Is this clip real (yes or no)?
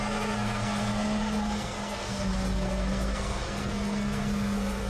no